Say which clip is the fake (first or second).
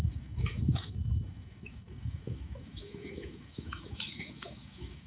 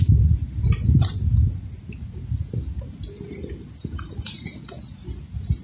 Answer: first